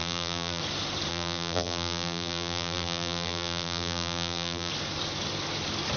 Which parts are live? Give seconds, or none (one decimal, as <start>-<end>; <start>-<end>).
0.6-1.1; 4.7-6.0